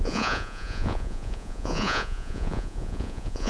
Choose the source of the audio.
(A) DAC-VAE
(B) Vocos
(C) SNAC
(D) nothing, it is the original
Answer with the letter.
B